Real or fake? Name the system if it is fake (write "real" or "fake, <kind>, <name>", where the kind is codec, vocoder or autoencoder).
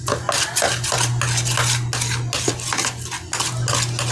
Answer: real